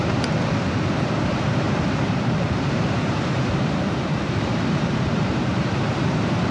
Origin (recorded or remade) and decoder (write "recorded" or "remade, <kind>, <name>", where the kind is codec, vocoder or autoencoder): remade, vocoder, BigVGAN v2